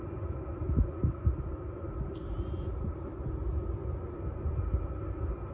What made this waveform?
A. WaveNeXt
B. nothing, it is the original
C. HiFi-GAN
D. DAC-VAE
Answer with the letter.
B